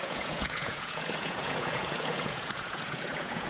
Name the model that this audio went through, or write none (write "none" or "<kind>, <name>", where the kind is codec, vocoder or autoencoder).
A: vocoder, Vocos